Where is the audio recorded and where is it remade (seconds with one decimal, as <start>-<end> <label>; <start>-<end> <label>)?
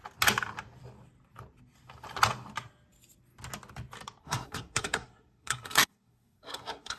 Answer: 0.0-4.2 recorded; 4.2-7.0 remade